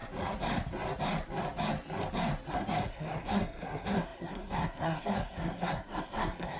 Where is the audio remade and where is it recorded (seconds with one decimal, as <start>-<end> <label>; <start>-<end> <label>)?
0.0-2.5 recorded; 2.5-6.6 remade